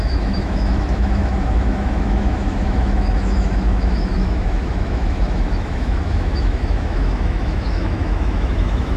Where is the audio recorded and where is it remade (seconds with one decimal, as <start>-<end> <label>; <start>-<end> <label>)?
0.0-9.0 remade